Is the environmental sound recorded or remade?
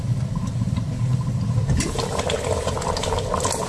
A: recorded